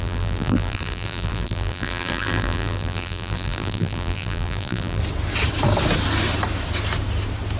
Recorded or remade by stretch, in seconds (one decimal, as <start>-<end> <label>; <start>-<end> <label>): 0.0-5.0 remade; 5.0-7.6 recorded

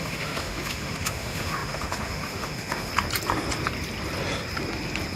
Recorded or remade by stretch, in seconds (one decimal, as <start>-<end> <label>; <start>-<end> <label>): 0.0-2.9 remade; 2.9-5.2 recorded

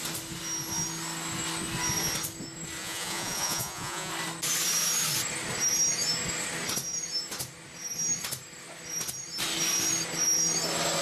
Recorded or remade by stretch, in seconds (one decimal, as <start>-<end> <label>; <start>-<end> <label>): 0.0-2.8 recorded; 2.8-4.1 remade; 4.1-11.0 recorded

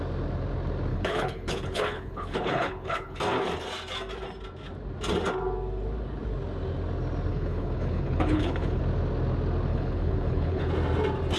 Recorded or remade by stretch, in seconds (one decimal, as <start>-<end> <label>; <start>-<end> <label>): 0.0-0.9 recorded; 0.9-3.2 remade; 3.2-7.3 recorded; 7.3-8.8 remade; 8.8-9.7 recorded; 9.7-10.7 remade; 10.7-11.4 recorded

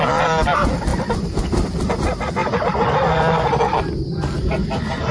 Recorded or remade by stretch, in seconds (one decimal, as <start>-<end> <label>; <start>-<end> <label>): 0.0-0.9 recorded; 0.9-1.4 remade; 1.4-2.4 recorded; 2.4-3.5 remade; 3.5-5.1 recorded

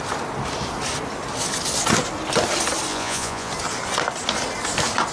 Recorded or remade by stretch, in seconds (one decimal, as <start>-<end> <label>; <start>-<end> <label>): 0.0-2.9 recorded; 2.9-3.5 remade; 3.5-5.1 recorded

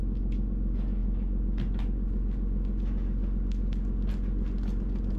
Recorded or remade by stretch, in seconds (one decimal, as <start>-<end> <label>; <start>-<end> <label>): 0.0-5.2 recorded